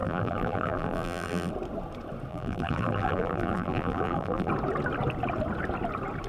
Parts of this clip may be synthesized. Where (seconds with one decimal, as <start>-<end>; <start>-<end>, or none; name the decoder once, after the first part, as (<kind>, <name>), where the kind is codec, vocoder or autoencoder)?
0.0-1.5 (vocoder, BigVGAN v2); 2.3-4.5